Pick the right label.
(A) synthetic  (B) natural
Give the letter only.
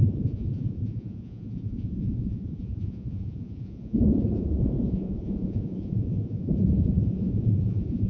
A